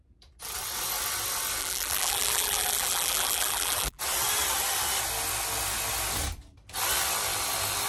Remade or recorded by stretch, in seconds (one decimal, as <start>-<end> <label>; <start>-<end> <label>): 0.0-1.6 recorded; 1.6-4.0 remade; 4.0-7.9 recorded

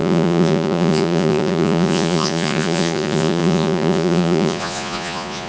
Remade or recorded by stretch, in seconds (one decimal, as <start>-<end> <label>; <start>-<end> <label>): 0.0-5.5 remade

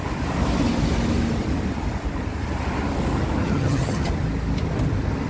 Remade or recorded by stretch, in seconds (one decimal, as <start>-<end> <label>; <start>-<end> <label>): 0.0-3.4 recorded; 3.4-4.1 remade; 4.1-5.3 recorded

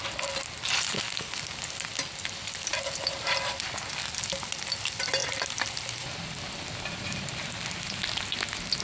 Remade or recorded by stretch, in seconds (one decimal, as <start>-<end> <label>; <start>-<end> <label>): 0.0-8.8 recorded

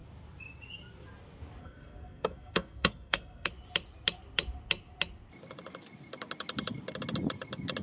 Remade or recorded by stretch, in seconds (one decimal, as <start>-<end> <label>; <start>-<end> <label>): 0.0-1.6 recorded; 1.6-3.5 remade; 3.5-7.8 recorded

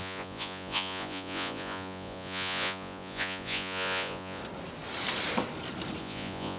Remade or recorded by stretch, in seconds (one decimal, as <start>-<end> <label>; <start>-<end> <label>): 0.0-4.4 remade; 4.4-6.0 recorded; 6.0-6.6 remade